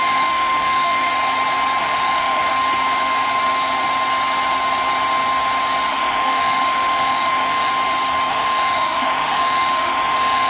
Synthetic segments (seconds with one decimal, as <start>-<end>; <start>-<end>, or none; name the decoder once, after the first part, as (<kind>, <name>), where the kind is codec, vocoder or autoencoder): 0.0-1.1 (autoencoder, DAC-VAE); 1.8-2.5; 5.9-7.7; 8.3-10.5